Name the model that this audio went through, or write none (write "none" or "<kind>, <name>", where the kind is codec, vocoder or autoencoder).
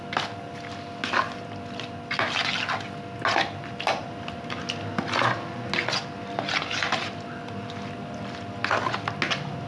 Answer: none